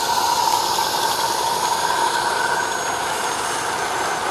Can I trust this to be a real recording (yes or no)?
yes